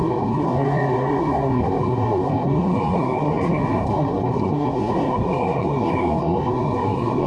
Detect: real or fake fake